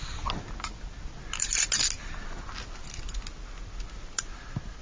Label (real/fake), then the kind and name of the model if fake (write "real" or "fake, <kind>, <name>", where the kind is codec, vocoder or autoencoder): real